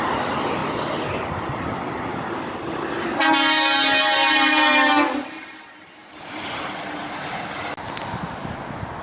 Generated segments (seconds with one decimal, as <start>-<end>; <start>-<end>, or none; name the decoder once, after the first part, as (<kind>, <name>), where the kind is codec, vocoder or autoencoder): 4.2-4.9 (vocoder, BigVGAN v2); 6.0-7.4

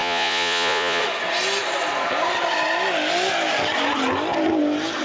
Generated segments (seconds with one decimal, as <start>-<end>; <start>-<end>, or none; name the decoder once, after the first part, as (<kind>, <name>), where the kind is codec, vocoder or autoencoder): 0.0-1.0 (vocoder, Vocos)